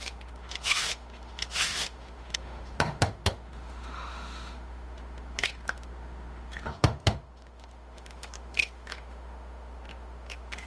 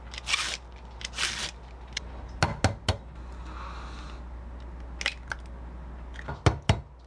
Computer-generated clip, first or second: first